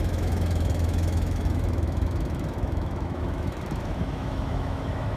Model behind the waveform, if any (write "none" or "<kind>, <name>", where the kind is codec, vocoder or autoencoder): autoencoder, DAC-VAE